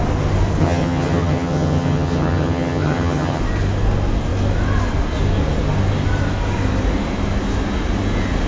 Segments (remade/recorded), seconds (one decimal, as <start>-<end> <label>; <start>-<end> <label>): 0.0-0.6 recorded; 0.6-3.4 remade; 3.4-8.5 recorded